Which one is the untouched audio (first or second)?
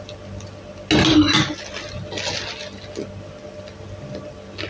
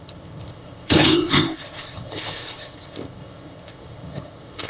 first